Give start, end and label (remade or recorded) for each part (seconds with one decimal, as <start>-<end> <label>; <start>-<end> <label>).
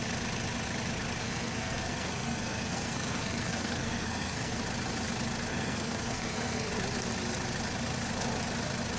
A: 0.0-1.2 recorded; 1.2-4.6 remade; 4.6-5.5 recorded; 5.5-6.7 remade; 6.7-9.0 recorded